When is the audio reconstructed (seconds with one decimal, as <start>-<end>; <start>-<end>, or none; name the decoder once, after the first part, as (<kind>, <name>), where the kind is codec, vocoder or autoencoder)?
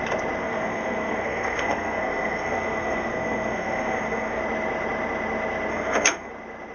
0.4-4.4 (codec, SNAC); 5.7-6.3